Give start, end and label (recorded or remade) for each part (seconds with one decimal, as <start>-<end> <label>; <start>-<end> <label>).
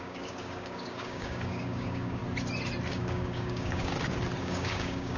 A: 0.0-2.2 remade; 2.2-2.9 recorded; 2.9-3.9 remade; 3.9-4.4 recorded; 4.4-5.2 remade